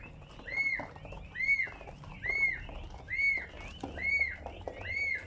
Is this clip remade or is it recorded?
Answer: recorded